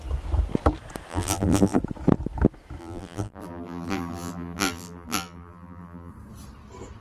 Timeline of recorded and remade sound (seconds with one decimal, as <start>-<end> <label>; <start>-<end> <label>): 0.0-1.1 recorded; 1.1-1.8 remade; 1.8-2.8 recorded; 2.8-6.1 remade; 6.1-7.0 recorded